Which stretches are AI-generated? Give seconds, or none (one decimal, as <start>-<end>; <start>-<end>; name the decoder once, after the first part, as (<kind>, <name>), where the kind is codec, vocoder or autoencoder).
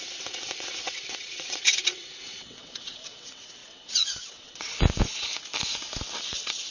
0.0-5.3 (vocoder, WaveNeXt); 6.2-6.7